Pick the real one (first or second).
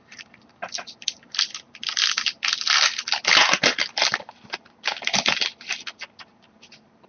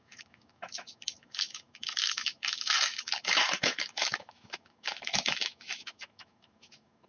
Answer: first